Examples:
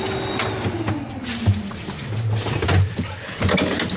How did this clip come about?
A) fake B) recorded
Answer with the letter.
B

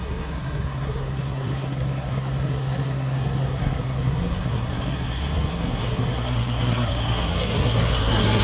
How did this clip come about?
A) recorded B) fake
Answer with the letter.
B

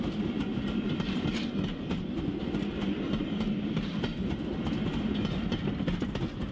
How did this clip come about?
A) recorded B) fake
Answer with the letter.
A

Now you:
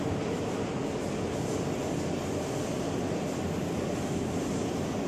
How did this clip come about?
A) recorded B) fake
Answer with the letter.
A